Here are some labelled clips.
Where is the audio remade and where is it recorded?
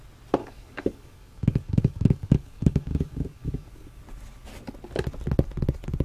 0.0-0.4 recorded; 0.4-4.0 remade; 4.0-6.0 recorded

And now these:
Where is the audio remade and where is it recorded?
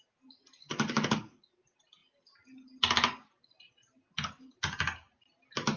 0.0-0.6 recorded; 0.6-1.5 remade; 1.5-5.8 recorded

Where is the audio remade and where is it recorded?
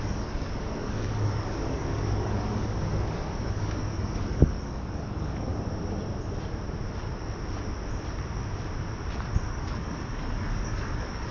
0.0-5.5 remade; 5.5-9.5 recorded; 9.5-11.3 remade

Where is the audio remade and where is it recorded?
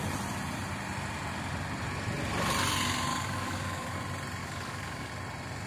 0.0-3.1 recorded; 3.1-4.0 remade; 4.0-4.4 recorded; 4.4-5.1 remade; 5.1-5.7 recorded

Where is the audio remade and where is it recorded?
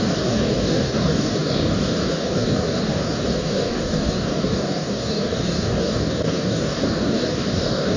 0.0-8.0 remade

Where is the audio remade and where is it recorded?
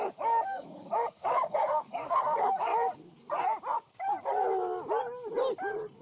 0.0-2.7 remade; 2.7-6.0 recorded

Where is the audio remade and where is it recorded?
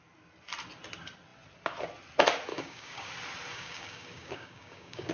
0.0-2.5 recorded; 2.5-3.1 remade; 3.1-3.5 recorded; 3.5-5.1 remade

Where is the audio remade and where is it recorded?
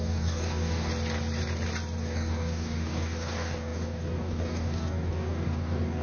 0.0-0.9 remade; 0.9-2.0 recorded; 2.0-6.0 remade